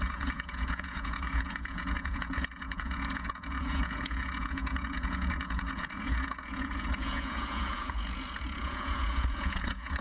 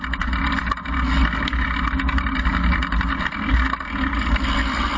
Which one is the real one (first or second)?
second